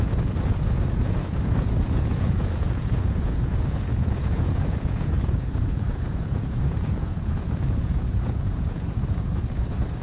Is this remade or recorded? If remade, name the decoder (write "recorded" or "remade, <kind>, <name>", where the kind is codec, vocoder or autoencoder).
remade, vocoder, Vocos